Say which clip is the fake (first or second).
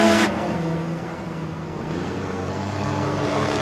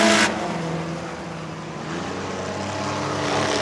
first